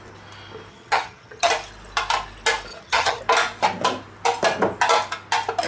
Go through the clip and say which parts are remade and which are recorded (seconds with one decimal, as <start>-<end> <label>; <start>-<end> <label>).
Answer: 0.0-0.7 recorded; 0.7-1.5 remade; 1.5-2.7 recorded; 2.7-3.2 remade; 3.2-5.7 recorded